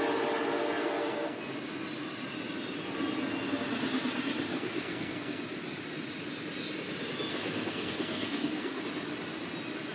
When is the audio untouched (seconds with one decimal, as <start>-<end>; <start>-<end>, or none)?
0.0-0.8; 1.4-4.5; 5.4-7.3; 8.8-9.9